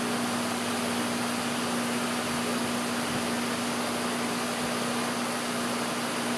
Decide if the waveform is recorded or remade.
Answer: recorded